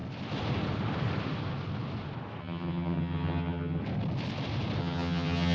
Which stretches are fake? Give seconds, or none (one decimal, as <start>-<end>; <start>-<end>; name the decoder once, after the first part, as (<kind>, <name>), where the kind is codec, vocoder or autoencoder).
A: 2.4-3.8 (vocoder, HiFi-GAN); 4.8-5.5